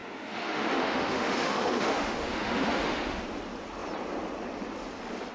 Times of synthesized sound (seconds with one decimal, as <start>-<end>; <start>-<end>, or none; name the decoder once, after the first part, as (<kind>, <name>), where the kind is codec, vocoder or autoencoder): 0.0-3.2 (autoencoder, DAC-VAE)